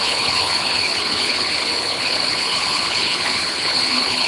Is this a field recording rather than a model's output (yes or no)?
no